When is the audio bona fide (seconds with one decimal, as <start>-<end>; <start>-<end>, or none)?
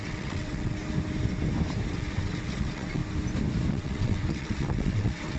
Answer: 0.8-1.9; 3.0-3.7